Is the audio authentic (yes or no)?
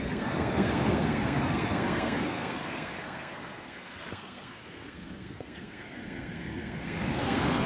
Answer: no